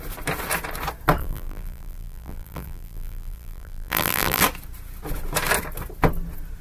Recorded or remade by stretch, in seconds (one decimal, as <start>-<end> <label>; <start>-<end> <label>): 0.0-1.2 recorded; 1.2-4.4 remade; 4.4-6.6 recorded